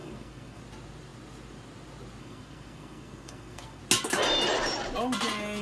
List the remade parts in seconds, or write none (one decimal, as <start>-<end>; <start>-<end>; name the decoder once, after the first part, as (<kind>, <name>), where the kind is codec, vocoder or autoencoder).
0.0-0.6 (codec, SNAC); 2.2-3.8